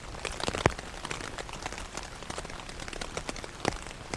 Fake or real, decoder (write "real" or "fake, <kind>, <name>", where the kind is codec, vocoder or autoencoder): real